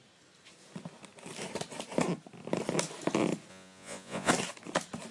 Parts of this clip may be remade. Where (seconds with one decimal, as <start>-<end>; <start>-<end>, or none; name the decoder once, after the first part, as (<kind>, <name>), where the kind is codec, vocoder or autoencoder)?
3.5-4.3 (vocoder, Vocos)